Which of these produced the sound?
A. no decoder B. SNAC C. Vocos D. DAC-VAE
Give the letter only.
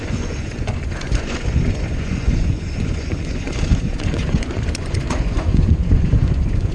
C